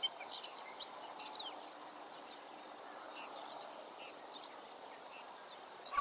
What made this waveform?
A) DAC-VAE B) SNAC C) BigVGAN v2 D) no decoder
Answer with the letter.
D